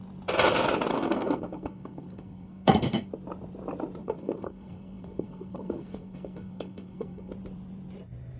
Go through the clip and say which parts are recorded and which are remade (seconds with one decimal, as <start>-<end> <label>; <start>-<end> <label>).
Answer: 0.0-0.9 recorded; 0.9-3.1 remade; 3.1-4.0 recorded; 4.0-7.3 remade; 7.3-8.4 recorded